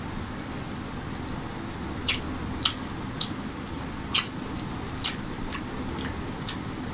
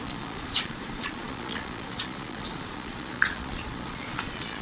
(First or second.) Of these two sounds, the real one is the first